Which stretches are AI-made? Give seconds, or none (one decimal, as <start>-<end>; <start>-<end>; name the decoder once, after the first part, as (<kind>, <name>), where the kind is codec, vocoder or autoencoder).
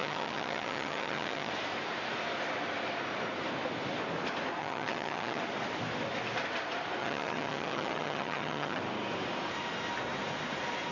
0.0-1.5 (vocoder, HiFi-GAN); 4.6-5.4; 7.0-8.8